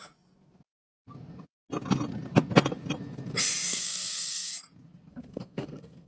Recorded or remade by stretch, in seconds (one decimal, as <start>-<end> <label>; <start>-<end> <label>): 0.0-3.7 recorded; 3.7-4.5 remade; 4.5-5.1 recorded; 5.1-6.1 remade